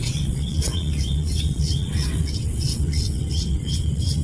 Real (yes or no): no